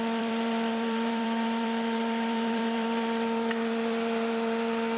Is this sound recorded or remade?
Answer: remade